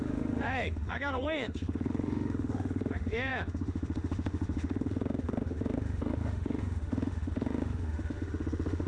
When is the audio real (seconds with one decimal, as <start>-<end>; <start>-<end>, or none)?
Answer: none